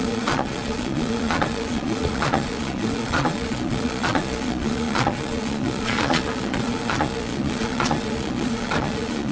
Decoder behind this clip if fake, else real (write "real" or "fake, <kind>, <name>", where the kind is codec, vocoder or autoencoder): fake, vocoder, Vocos